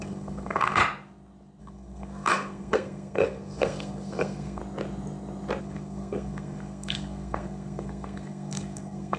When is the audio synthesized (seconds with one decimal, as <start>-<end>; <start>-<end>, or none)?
0.0-0.8; 1.6-4.6; 5.6-9.2